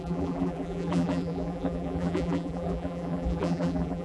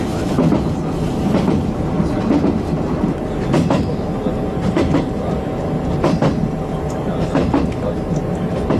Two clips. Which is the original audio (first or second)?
second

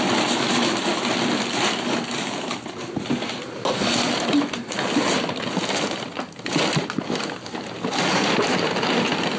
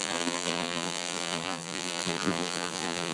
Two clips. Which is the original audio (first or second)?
first